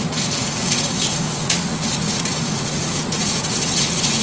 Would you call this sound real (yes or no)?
no